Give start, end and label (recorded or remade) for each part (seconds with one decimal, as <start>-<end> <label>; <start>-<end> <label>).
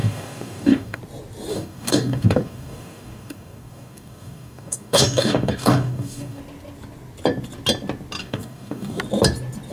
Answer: 0.0-1.0 remade; 1.0-1.5 recorded; 1.5-6.4 remade; 6.4-8.2 recorded; 8.2-9.0 remade; 9.0-9.7 recorded